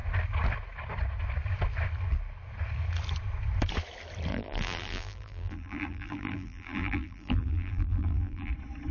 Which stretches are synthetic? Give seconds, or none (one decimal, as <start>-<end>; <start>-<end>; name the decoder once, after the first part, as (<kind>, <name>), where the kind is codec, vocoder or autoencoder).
4.3-8.5 (vocoder, BigVGAN v2)